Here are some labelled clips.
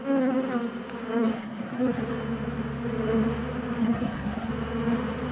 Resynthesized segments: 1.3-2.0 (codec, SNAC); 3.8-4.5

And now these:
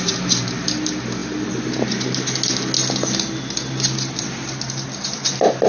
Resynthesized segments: none

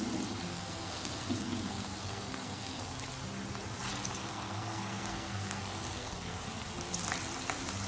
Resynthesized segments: 0.5-3.0 (codec, SNAC); 4.2-6.4

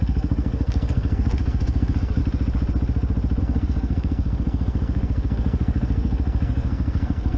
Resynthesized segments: 0.0-2.2 (codec, SNAC); 3.4-7.4

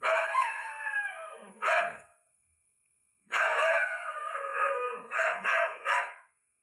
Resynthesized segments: 0.0-6.6 (codec, SNAC)

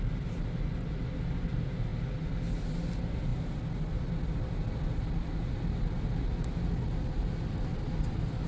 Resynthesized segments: none